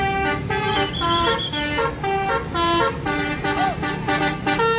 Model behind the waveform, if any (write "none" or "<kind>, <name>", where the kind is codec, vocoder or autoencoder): none